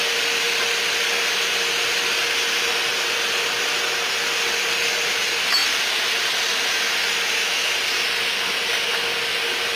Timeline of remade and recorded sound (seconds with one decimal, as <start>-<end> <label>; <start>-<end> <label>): 0.0-9.8 recorded